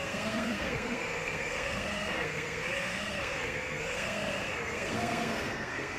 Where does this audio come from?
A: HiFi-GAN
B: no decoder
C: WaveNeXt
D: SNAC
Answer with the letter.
D